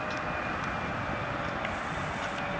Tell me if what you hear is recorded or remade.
recorded